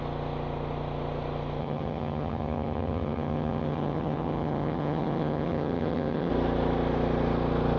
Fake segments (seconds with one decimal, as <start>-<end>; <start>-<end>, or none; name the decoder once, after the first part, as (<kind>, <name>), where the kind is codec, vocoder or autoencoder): 1.6-6.3 (vocoder, HiFi-GAN)